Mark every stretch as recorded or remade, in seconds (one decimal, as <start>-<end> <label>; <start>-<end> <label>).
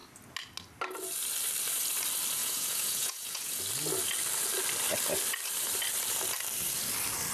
0.0-2.4 recorded; 2.4-3.6 remade; 3.6-7.3 recorded